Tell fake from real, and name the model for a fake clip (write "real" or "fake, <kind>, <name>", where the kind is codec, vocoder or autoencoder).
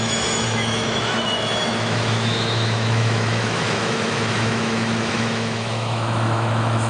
fake, autoencoder, DAC-VAE